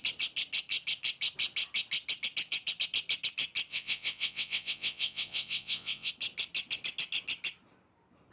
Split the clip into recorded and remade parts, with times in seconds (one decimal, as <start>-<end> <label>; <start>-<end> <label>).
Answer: 0.0-3.7 recorded; 3.7-6.1 remade; 6.1-8.3 recorded